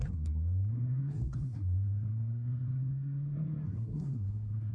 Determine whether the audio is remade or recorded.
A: remade